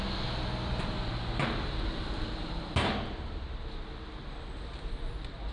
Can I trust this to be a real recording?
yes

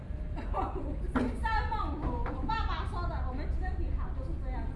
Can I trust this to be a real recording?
yes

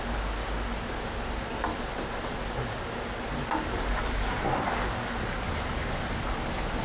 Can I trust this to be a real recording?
yes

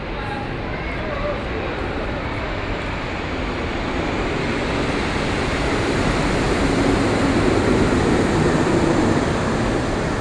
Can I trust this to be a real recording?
yes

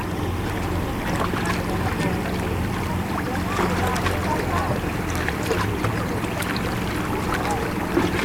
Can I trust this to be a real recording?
yes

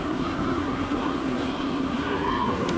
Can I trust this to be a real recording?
no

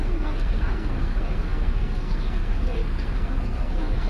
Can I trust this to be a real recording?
no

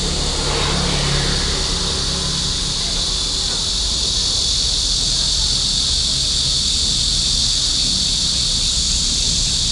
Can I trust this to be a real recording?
yes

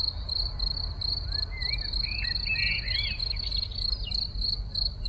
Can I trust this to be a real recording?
yes